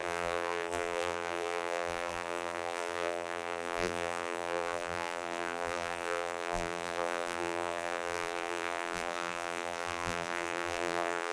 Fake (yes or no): yes